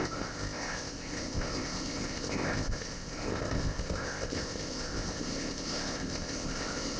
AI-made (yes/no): yes